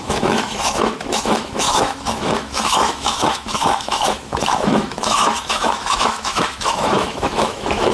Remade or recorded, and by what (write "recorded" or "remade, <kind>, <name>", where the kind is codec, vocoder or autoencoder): remade, autoencoder, DAC-VAE